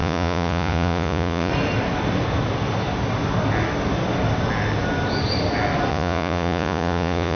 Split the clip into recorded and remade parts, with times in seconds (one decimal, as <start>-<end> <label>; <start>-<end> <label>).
0.0-1.5 remade; 1.5-5.9 recorded; 5.9-7.4 remade